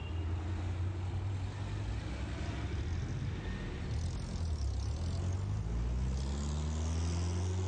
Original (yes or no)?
yes